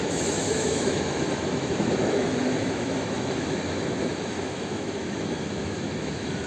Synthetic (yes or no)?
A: yes